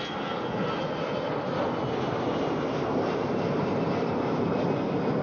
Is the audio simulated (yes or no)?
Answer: no